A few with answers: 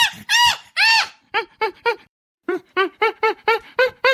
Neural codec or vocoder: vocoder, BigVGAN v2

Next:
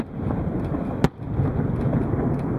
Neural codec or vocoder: none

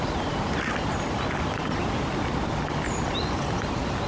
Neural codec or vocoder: none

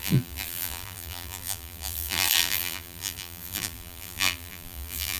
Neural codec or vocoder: vocoder, BigVGAN v2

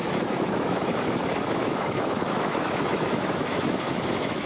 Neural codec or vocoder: autoencoder, DAC-VAE